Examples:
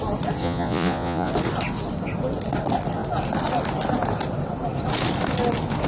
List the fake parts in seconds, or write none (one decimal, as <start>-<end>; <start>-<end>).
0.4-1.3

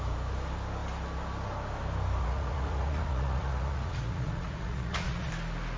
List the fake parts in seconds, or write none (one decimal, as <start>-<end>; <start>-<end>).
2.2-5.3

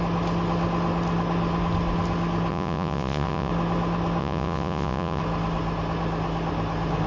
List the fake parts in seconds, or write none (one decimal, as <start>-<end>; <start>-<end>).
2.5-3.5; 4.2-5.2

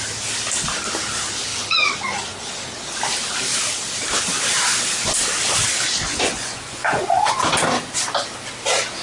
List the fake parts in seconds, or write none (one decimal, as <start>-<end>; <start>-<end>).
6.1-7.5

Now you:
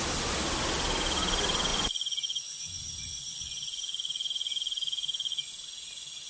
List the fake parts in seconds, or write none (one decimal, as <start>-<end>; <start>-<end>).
1.7-5.5

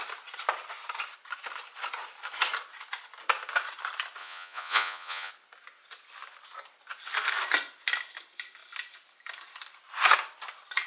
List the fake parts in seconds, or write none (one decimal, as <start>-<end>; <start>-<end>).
4.2-5.3

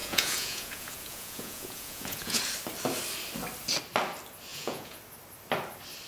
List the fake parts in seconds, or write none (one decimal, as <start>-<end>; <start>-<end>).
0.0-2.4; 4.5-5.0